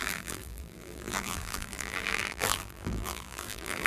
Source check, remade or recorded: remade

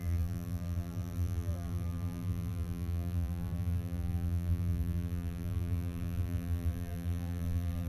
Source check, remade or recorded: remade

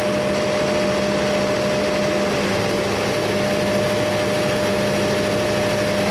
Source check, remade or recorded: recorded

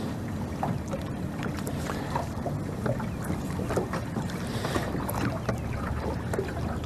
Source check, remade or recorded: remade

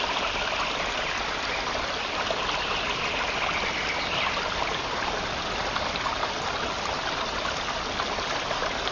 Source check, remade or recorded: recorded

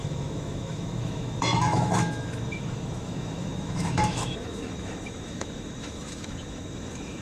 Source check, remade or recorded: remade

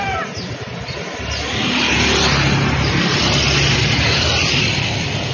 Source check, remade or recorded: recorded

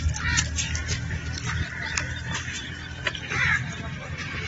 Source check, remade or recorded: recorded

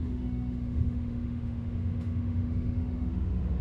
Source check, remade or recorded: remade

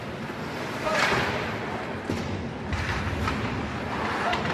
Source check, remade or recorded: recorded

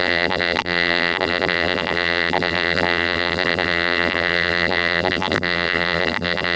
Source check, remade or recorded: remade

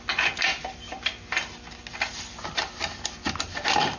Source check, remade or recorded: recorded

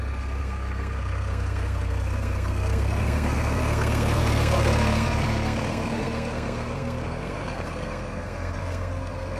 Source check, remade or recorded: remade